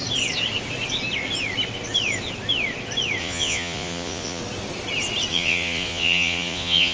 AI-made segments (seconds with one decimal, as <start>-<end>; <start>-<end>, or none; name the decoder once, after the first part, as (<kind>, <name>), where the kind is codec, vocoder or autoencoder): 3.2-4.4 (vocoder, Vocos); 5.3-6.9